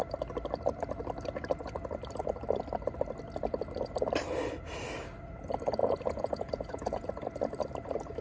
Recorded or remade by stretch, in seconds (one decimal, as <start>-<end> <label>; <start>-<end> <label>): 0.0-5.8 recorded; 5.8-7.1 remade; 7.1-8.2 recorded